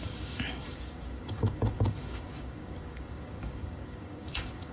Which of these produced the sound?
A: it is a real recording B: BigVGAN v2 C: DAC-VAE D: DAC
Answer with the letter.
D